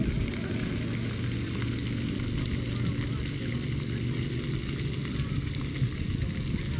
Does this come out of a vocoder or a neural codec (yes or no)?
no